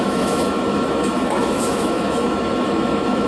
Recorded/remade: remade